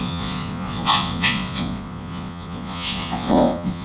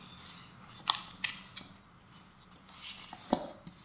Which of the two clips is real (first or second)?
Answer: second